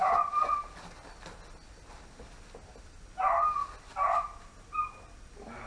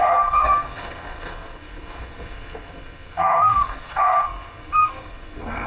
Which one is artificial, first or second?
second